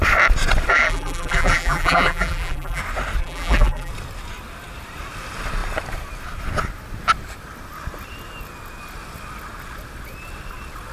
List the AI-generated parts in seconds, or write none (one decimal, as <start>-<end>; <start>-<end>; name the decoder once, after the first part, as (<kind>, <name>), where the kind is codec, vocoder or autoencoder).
0.7-2.8 (vocoder, BigVGAN v2); 3.2-3.9